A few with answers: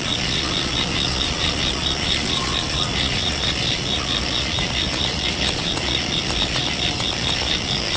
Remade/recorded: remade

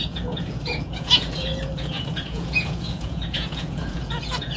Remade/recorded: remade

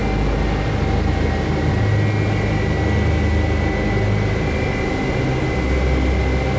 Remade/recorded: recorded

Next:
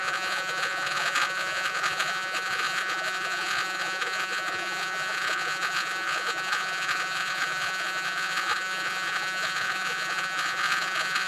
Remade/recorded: remade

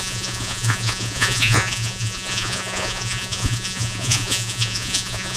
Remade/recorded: remade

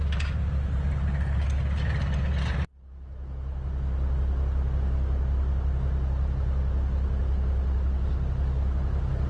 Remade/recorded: recorded